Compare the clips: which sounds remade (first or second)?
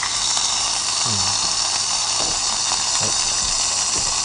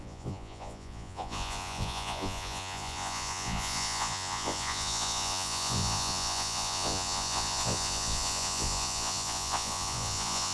second